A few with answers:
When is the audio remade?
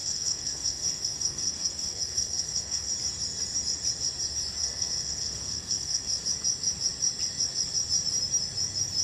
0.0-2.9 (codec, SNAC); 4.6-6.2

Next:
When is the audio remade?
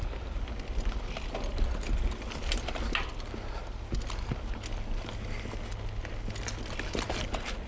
none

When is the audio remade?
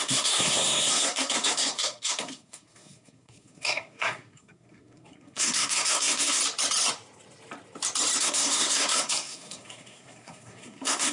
0.0-6.4 (codec, SNAC); 8.2-11.1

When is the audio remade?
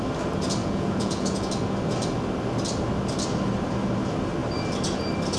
0.6-1.5 (vocoder, Vocos)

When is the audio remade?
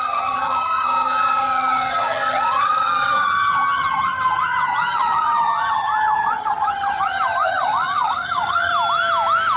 0.0-8.7 (vocoder, HiFi-GAN)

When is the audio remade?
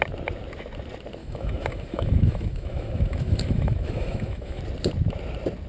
1.2-4.6 (autoencoder, DAC-VAE)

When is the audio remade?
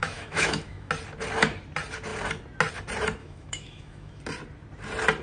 0.0-0.9 (autoencoder, DAC-VAE); 3.2-4.2